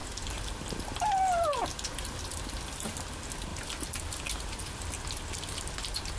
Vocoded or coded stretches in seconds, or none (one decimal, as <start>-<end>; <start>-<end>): none